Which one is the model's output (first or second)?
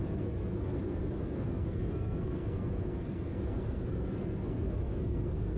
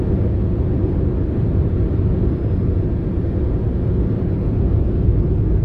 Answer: first